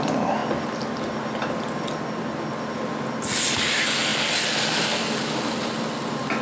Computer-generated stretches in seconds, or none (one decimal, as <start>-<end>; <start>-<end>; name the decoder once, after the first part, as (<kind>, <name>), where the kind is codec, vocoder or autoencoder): none